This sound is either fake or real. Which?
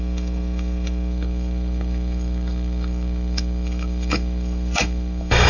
fake